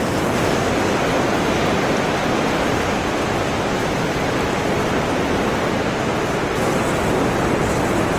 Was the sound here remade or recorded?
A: recorded